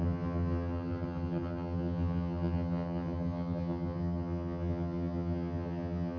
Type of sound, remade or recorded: remade